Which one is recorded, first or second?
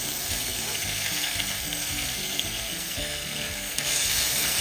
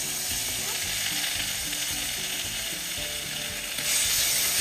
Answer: second